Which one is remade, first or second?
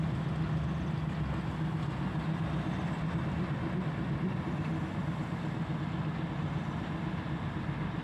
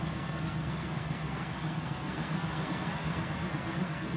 second